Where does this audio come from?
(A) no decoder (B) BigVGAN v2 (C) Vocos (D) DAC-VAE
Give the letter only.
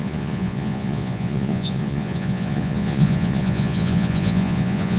C